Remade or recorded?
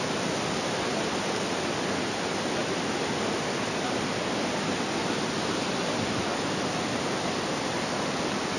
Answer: recorded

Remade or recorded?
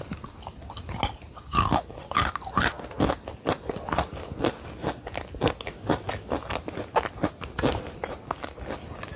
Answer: recorded